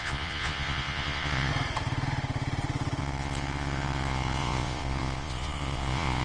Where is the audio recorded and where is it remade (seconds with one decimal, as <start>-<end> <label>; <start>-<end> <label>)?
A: 0.0-1.5 remade; 1.5-3.0 recorded; 3.0-6.2 remade